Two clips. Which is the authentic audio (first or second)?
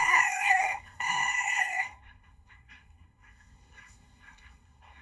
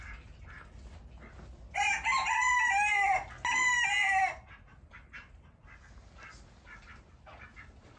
second